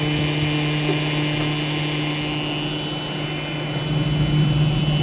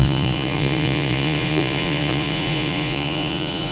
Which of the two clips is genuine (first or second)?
first